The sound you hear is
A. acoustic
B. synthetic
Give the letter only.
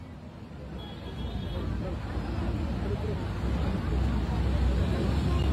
A